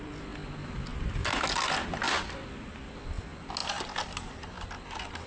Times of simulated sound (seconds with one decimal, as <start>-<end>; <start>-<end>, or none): none